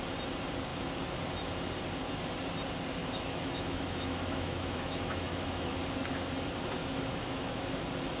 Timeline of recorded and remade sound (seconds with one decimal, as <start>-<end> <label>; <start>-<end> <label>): 0.0-3.0 recorded; 3.0-5.7 remade; 5.7-6.8 recorded; 6.8-7.6 remade; 7.6-8.2 recorded